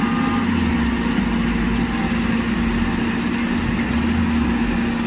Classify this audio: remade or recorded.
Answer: recorded